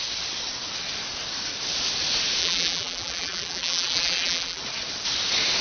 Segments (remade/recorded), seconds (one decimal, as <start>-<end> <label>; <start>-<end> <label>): 0.0-2.4 recorded; 2.4-4.6 remade; 4.6-5.6 recorded